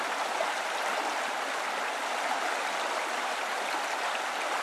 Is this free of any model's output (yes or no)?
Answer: yes